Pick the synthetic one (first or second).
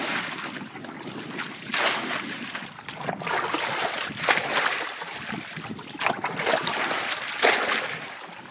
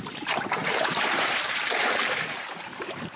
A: second